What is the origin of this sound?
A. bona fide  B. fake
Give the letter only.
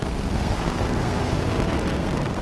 B